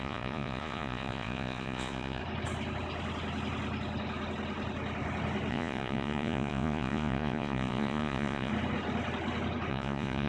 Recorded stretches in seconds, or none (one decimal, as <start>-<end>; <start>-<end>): 2.2-5.5; 8.5-9.7